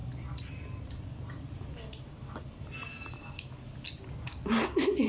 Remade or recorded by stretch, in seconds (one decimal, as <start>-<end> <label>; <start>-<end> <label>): 0.0-3.1 recorded; 3.1-3.7 remade; 3.7-5.1 recorded